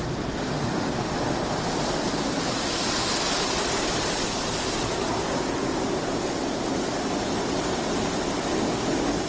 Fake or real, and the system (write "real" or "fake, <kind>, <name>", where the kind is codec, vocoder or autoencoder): real